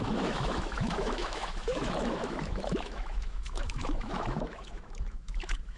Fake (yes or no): yes